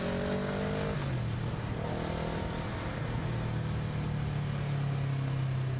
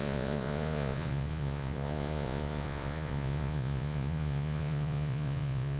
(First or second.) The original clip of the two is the first